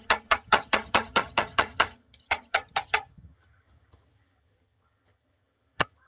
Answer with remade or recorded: remade